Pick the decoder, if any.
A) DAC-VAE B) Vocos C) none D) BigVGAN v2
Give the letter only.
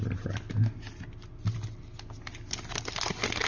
C